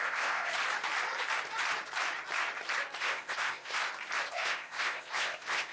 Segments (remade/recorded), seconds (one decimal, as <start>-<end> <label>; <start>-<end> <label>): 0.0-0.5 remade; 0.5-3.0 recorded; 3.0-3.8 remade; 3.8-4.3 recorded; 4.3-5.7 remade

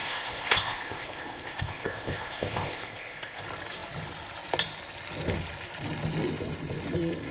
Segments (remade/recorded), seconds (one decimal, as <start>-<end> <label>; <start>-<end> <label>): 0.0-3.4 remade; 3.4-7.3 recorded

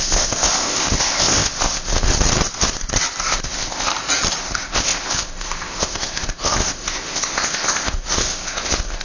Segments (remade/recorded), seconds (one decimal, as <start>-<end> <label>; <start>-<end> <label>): 0.0-2.1 remade; 2.1-3.2 recorded; 3.2-3.9 remade; 3.9-4.4 recorded; 4.4-9.0 remade